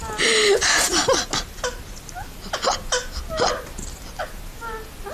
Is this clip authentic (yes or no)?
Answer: yes